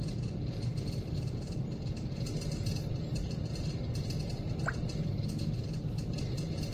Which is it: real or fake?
real